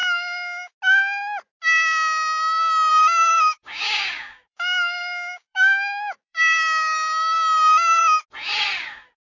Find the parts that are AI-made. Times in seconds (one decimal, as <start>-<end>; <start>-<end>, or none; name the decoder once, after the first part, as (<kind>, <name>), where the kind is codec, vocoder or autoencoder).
0.0-0.7 (codec, DAC); 2.9-8.0